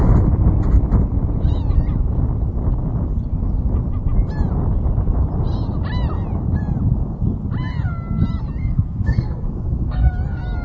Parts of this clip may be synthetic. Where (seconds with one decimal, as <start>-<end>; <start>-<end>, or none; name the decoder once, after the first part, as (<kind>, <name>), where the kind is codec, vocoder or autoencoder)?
8.6-10.1 (codec, SNAC)